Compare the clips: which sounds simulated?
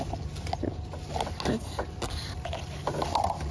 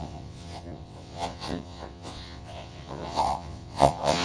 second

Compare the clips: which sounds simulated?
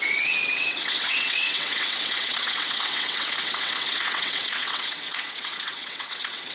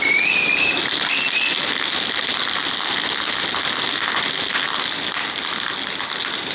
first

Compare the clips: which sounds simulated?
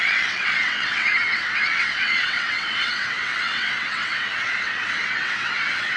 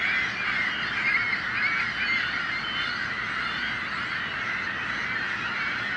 first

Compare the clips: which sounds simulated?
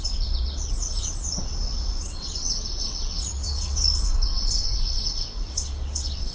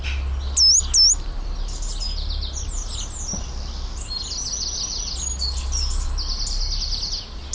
first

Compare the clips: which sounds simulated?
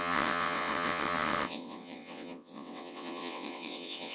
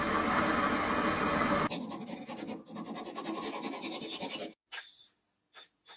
first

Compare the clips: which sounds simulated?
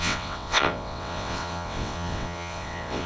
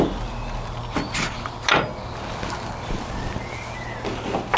first